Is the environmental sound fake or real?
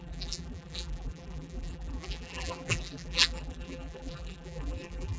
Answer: fake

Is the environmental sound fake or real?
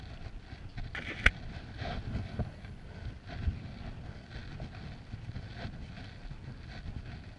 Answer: real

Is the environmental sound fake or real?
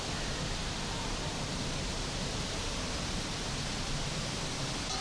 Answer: real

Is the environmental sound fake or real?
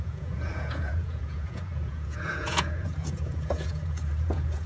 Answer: fake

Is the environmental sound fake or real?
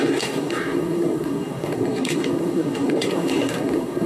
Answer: fake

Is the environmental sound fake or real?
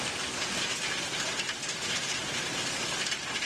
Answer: real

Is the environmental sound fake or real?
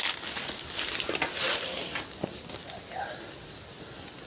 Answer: real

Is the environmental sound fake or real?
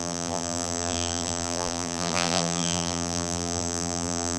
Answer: fake